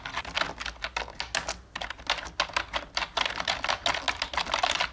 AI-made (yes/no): no